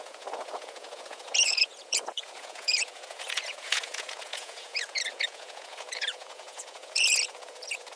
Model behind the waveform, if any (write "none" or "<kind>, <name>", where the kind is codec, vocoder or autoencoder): vocoder, Vocos